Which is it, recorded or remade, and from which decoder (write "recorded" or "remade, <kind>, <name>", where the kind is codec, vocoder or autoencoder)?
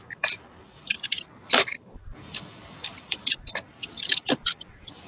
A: remade, vocoder, BigVGAN v2